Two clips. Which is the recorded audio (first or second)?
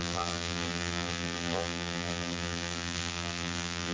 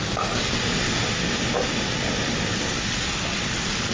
second